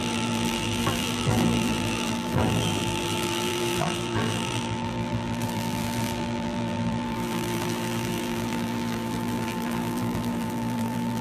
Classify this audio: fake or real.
fake